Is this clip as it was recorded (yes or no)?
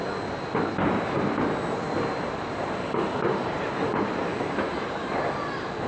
yes